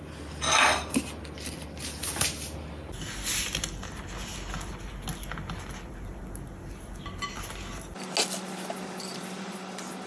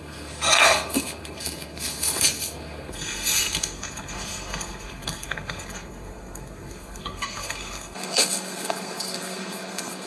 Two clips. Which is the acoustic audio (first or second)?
first